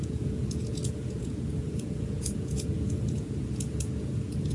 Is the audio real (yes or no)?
no